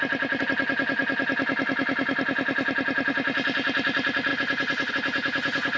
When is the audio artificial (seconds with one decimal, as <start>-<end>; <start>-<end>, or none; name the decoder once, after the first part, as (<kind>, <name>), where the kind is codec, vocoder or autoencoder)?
none